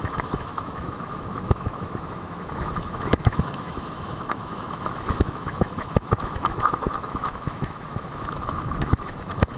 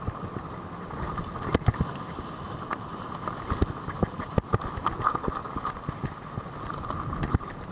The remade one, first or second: first